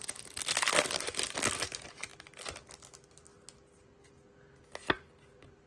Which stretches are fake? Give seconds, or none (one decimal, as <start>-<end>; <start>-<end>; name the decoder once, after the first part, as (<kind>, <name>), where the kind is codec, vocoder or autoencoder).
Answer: none